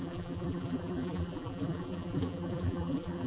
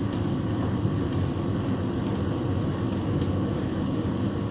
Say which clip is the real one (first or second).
second